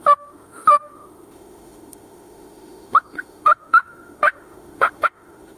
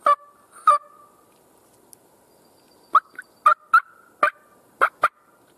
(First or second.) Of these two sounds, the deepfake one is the first